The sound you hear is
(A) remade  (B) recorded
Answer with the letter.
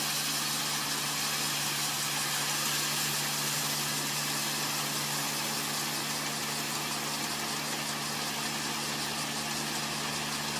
B